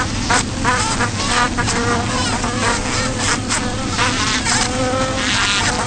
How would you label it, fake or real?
real